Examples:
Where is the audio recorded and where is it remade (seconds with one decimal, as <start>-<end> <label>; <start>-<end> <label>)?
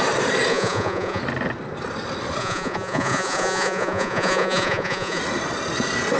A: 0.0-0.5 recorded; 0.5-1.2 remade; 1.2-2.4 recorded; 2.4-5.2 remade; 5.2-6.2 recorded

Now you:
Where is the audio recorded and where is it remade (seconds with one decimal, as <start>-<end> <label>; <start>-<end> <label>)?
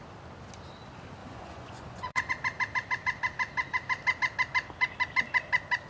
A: 0.0-1.2 recorded; 1.2-2.3 remade; 2.3-5.9 recorded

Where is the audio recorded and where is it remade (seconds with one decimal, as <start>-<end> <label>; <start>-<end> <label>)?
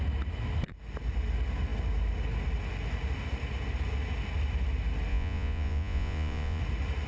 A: 0.0-5.1 recorded; 5.1-6.6 remade; 6.6-7.1 recorded